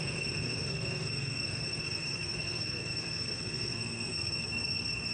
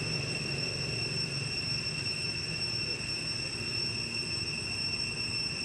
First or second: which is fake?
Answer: first